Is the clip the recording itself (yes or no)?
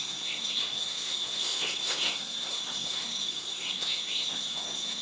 no